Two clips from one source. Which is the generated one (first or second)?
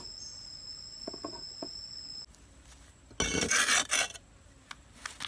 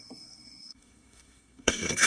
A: second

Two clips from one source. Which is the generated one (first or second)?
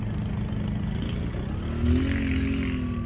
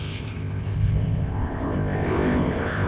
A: second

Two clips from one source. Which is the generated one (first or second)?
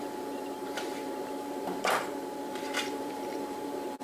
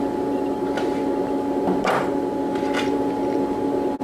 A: first